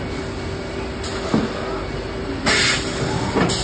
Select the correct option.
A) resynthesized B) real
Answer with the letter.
B